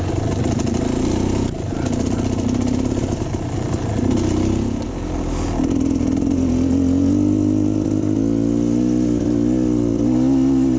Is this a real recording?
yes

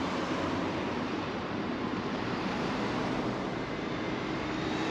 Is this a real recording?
no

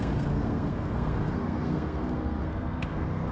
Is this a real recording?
no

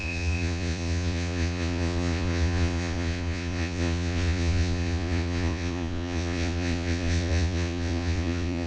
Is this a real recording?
no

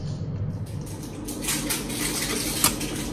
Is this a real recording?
yes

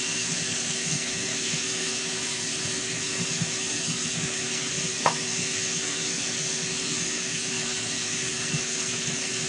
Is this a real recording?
no